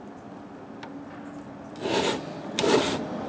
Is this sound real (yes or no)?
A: yes